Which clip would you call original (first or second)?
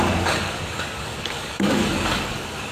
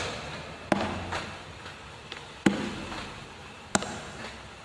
second